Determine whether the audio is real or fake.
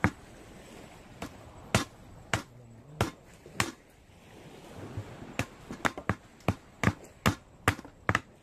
real